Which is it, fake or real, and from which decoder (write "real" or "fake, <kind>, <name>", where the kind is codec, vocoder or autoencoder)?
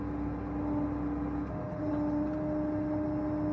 real